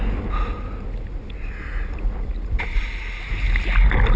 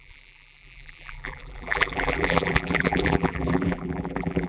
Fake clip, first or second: second